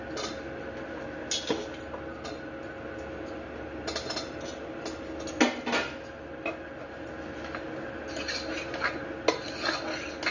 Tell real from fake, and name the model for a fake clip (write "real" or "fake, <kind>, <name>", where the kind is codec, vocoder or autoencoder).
real